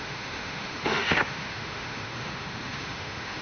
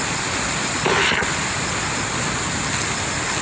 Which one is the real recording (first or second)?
second